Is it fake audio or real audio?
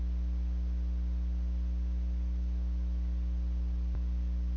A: real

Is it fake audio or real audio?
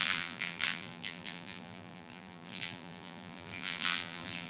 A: fake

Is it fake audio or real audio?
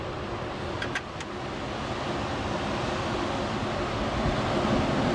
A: real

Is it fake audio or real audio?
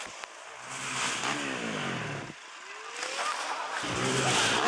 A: real